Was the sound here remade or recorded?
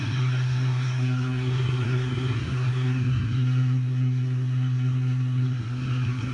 remade